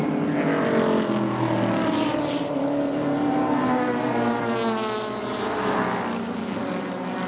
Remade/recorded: recorded